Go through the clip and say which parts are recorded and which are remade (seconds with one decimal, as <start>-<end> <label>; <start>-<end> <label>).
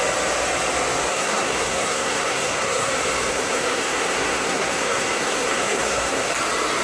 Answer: 0.0-1.1 recorded; 1.1-2.9 remade; 2.9-3.3 recorded; 3.3-6.3 remade; 6.3-6.8 recorded